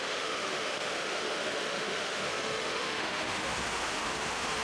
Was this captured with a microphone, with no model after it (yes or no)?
no